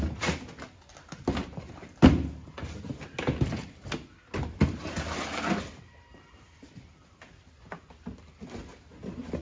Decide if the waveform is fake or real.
real